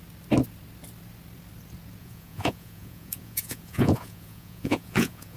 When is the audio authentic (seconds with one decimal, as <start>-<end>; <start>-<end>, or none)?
0.0-2.0